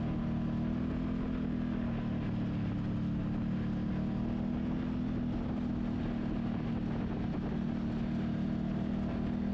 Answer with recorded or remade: recorded